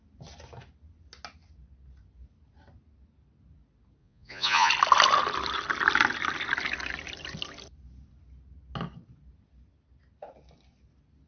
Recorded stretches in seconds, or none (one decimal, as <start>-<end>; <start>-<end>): 0.0-4.0; 4.7-11.3